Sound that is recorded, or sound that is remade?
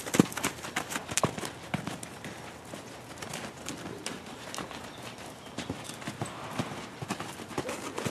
recorded